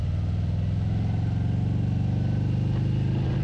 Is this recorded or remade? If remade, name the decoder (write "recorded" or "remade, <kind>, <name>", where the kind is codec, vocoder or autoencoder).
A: recorded